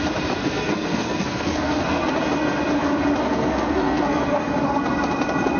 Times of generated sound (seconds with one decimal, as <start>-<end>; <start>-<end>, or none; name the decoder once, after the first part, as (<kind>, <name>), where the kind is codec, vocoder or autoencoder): 0.4-2.1 (codec, SNAC); 3.2-4.4